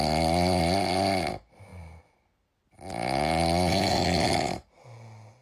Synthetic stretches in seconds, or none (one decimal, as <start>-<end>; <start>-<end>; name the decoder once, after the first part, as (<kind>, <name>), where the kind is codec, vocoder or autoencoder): none